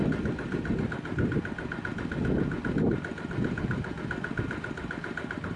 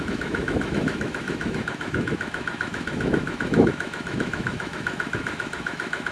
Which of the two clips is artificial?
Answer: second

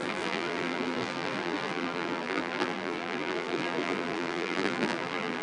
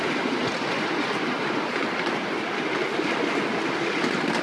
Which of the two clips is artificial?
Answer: first